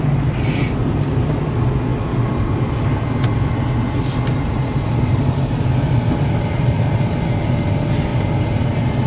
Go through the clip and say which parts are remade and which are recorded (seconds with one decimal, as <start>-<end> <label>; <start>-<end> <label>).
0.0-9.1 recorded